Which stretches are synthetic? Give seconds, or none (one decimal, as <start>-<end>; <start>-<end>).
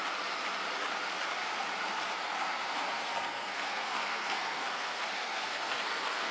2.4-6.3